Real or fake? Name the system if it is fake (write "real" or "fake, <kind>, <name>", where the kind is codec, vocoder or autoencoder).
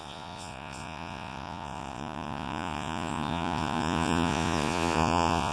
fake, vocoder, Vocos